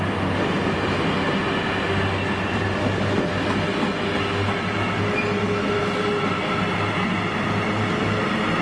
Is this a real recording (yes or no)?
yes